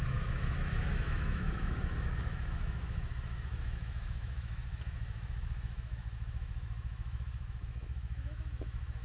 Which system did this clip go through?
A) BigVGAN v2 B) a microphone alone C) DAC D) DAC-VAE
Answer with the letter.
D